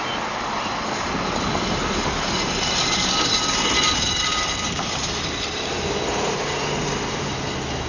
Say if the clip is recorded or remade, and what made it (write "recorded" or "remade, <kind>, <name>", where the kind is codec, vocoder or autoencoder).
recorded